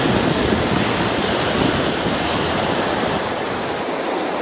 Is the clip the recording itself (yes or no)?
yes